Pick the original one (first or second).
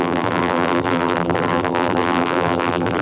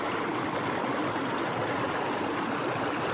second